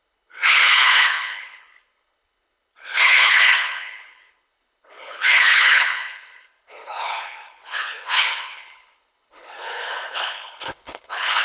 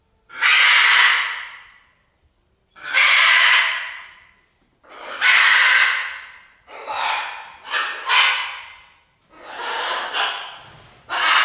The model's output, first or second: first